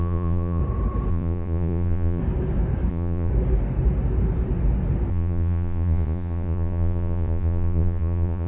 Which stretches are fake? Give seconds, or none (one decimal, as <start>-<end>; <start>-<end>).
0.0-0.6; 1.1-2.2; 2.9-3.3; 5.1-8.5